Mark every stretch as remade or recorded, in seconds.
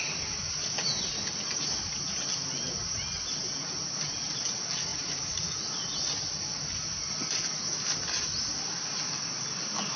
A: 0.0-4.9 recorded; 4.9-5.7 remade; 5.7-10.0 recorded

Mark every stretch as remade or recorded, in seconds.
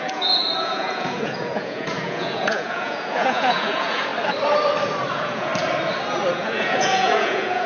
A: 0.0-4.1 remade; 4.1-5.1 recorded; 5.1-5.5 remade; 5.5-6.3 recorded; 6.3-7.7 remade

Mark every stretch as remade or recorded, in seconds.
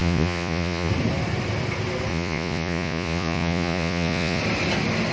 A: 0.0-0.9 remade; 0.9-2.1 recorded; 2.1-4.4 remade; 4.4-5.1 recorded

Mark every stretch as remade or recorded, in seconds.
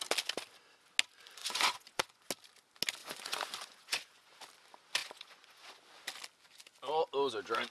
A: 0.0-1.4 recorded; 1.4-2.3 remade; 2.3-3.0 recorded; 3.0-4.3 remade; 4.3-5.0 recorded; 5.0-5.8 remade; 5.8-7.7 recorded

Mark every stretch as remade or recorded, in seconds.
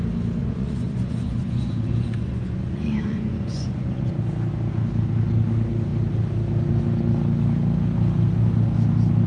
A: 0.0-0.4 recorded; 0.4-4.1 remade; 4.1-9.3 recorded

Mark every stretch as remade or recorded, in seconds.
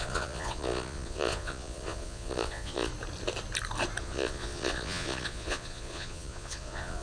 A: 0.0-2.9 remade; 2.9-4.0 recorded; 4.0-7.0 remade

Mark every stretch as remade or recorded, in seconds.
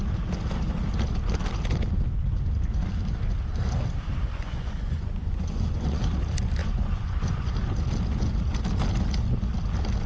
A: 0.0-4.2 recorded; 4.2-6.0 remade; 6.0-6.6 recorded; 6.6-7.5 remade; 7.5-10.1 recorded